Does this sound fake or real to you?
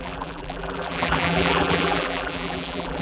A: fake